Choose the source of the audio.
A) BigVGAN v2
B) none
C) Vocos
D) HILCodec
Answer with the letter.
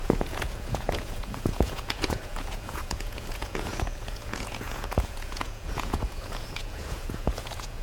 C